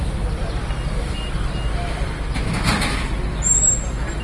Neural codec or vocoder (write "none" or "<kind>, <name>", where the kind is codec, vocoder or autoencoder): none